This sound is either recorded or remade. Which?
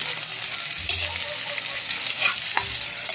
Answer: recorded